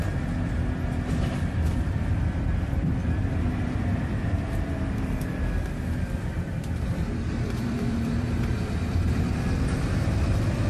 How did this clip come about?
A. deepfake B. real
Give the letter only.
A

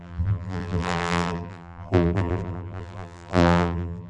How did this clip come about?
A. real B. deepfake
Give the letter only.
B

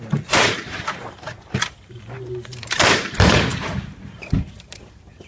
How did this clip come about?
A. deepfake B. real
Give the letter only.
A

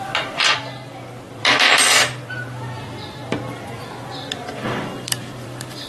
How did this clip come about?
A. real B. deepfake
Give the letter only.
B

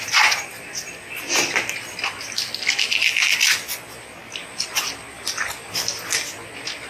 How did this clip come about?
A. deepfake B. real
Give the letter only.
B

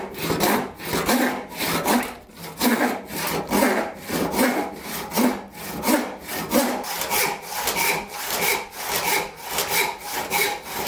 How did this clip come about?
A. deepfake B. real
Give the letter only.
B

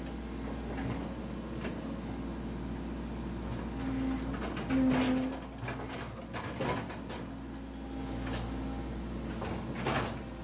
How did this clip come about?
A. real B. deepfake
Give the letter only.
A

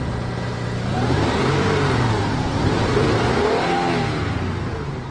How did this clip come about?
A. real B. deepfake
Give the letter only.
B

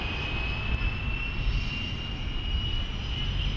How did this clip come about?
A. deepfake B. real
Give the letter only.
B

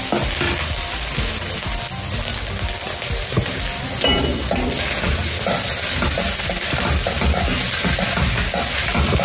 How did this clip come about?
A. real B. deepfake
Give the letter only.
A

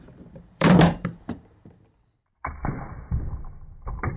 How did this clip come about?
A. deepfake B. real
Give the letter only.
A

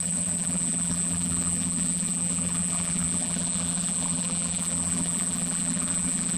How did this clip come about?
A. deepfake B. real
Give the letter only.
A